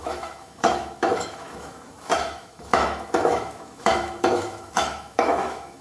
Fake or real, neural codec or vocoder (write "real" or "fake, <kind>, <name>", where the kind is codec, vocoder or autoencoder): fake, autoencoder, DAC-VAE